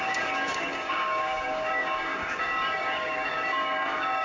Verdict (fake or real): fake